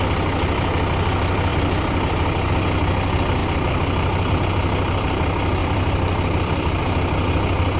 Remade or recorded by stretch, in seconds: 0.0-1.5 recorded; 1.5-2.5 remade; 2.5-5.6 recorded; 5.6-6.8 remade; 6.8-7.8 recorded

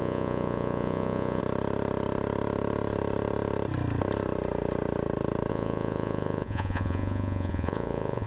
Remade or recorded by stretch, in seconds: 0.0-1.4 remade; 1.4-5.5 recorded; 5.5-8.3 remade

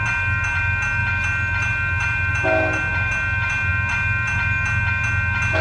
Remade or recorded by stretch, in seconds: 0.0-5.6 recorded

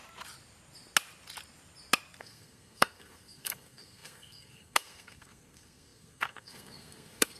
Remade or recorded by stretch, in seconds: 0.0-2.2 recorded; 2.2-7.4 remade

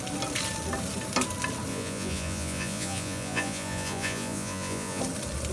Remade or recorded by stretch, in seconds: 0.0-1.7 recorded; 1.7-5.0 remade; 5.0-5.5 recorded

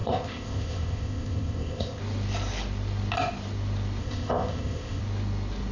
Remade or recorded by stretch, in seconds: 0.0-2.0 remade; 2.0-4.0 recorded; 4.0-5.0 remade; 5.0-5.7 recorded

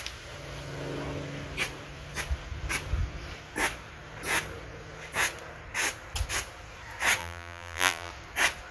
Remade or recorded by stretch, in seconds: 0.0-7.2 recorded; 7.2-8.1 remade; 8.1-8.7 recorded